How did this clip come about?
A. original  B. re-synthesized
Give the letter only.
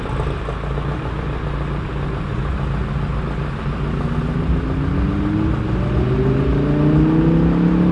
A